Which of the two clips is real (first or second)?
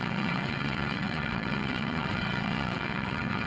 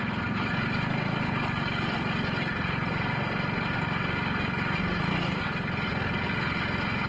second